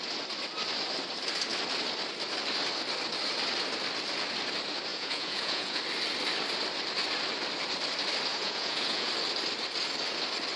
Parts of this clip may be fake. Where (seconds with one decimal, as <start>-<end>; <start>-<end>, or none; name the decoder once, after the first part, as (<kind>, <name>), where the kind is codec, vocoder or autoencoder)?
4.9-5.8 (vocoder, Vocos); 8.3-9.1